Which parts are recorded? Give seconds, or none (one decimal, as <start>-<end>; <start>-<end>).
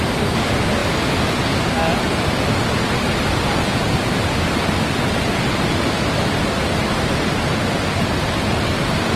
0.0-9.2